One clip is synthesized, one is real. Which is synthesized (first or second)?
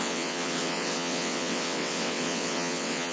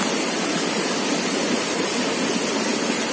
first